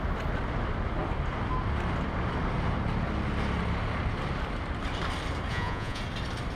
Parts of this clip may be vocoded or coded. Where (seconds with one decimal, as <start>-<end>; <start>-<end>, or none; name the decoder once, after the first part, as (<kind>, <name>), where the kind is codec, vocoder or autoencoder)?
5.5-6.0 (vocoder, Vocos)